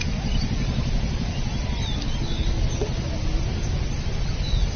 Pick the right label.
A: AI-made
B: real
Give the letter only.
B